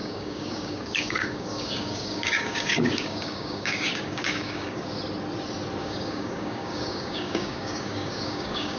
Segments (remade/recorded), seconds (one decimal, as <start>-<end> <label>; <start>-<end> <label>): 0.0-4.8 remade; 4.8-5.8 recorded; 5.8-8.8 remade